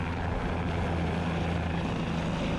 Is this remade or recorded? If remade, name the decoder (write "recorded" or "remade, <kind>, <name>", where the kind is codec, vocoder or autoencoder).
recorded